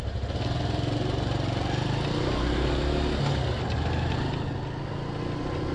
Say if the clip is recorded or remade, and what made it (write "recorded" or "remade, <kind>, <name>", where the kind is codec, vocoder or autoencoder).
recorded